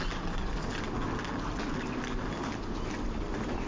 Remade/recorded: recorded